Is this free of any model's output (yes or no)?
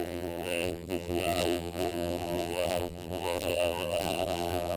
no